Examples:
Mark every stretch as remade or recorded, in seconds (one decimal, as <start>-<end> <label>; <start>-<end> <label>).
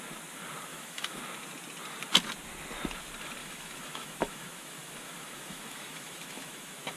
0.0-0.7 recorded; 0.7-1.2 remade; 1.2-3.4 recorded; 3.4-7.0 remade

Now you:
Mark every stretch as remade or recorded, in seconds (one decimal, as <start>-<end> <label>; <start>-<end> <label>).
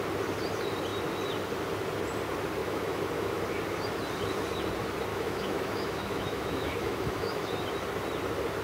0.0-2.6 recorded; 2.6-3.4 remade; 3.4-5.1 recorded; 5.1-7.5 remade; 7.5-8.6 recorded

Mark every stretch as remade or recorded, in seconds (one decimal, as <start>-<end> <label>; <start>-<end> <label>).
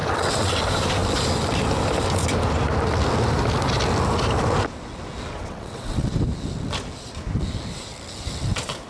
0.0-0.6 remade; 0.6-5.4 recorded; 5.4-6.1 remade; 6.1-8.9 recorded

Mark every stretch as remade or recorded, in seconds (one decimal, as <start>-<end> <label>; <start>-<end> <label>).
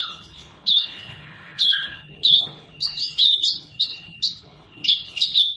0.0-5.6 remade